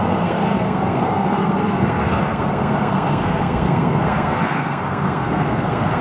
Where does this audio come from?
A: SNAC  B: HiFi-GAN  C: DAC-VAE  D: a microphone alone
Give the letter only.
A